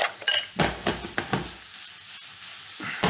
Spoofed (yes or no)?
no